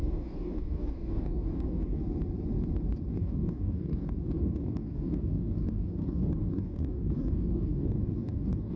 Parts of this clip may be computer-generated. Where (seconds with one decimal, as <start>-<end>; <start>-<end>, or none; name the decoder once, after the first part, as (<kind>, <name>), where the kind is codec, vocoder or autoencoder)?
0.0-2.0 (codec, DAC); 3.1-8.8